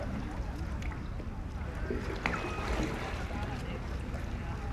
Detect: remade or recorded recorded